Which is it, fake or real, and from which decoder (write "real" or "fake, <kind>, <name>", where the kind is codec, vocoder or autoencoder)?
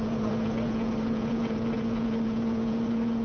fake, vocoder, Vocos